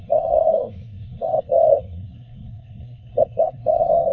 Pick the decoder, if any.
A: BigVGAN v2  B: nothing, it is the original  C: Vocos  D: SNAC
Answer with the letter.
D